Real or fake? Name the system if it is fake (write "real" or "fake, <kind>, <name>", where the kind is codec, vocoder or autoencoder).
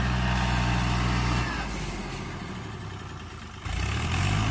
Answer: real